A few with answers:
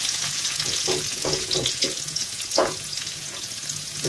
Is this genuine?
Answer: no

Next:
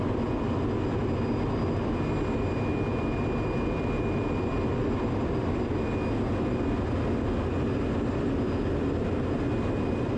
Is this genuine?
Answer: yes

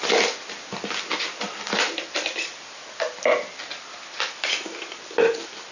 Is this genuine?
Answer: yes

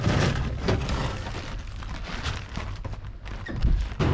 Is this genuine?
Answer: yes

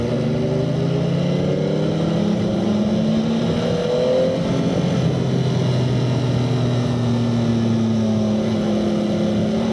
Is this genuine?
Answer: yes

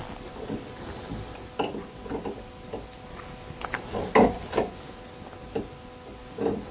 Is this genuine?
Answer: yes